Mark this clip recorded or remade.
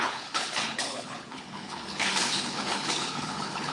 remade